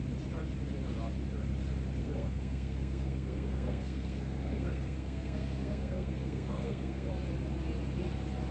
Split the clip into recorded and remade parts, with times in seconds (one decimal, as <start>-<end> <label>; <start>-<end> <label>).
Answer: 0.0-2.0 recorded; 2.0-7.1 remade; 7.1-8.5 recorded